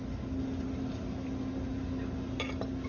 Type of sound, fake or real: real